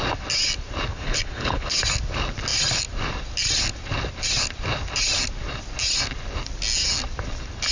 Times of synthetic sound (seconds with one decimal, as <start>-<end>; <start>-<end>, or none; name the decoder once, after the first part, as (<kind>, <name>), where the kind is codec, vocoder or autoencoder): 0.9-1.8 (codec, HILCodec)